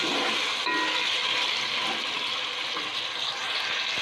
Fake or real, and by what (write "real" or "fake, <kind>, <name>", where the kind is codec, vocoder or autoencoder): real